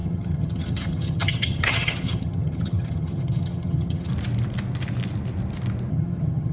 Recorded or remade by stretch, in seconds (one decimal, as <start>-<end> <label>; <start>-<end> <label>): 0.0-4.1 remade; 4.1-5.9 recorded; 5.9-6.5 remade